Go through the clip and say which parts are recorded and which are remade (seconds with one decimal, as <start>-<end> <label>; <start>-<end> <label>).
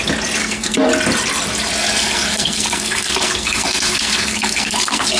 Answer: 0.0-0.4 recorded; 0.4-0.9 remade; 0.9-2.0 recorded; 2.0-5.2 remade